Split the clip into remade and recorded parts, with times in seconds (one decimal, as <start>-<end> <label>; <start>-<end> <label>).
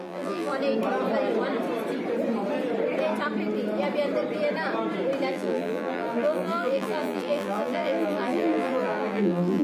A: 0.0-0.5 remade; 0.5-5.3 recorded; 5.3-9.6 remade